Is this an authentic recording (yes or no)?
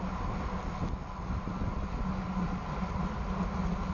yes